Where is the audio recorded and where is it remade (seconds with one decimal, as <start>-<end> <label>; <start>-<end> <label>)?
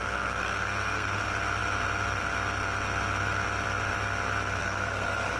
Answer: 0.0-0.4 recorded; 0.4-1.2 remade; 1.2-4.6 recorded; 4.6-5.4 remade